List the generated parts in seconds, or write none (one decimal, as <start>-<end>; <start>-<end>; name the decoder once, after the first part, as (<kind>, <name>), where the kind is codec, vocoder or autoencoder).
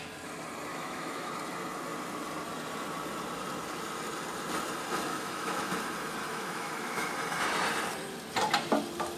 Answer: 0.7-1.3 (autoencoder, DAC-VAE); 5.1-5.7; 6.2-7.1